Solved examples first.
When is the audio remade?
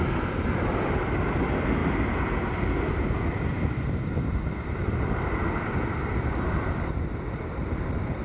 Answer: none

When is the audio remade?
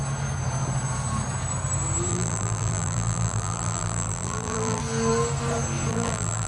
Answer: 2.1-4.8 (vocoder, BigVGAN v2); 5.9-6.5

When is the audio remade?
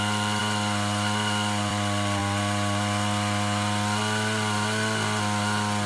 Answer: 0.0-0.4 (vocoder, BigVGAN v2); 1.7-2.2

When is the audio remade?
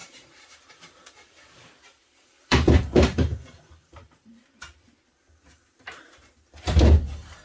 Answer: 0.0-4.4 (vocoder, BigVGAN v2)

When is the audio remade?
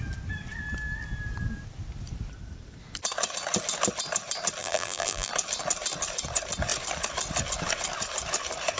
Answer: 4.6-5.3 (vocoder, BigVGAN v2)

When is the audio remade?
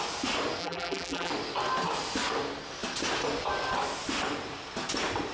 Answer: 0.6-1.3 (vocoder, BigVGAN v2)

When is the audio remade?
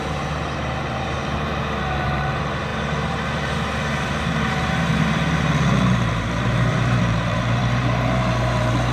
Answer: 0.0-8.9 (vocoder, BigVGAN v2)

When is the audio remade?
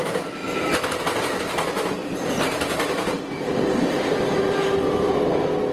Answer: 2.0-3.2 (vocoder, BigVGAN v2)